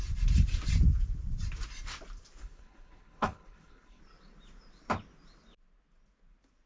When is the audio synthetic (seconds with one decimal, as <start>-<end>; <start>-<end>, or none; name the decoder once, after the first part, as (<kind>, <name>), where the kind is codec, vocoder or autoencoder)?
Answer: 2.4-4.0 (codec, HILCodec)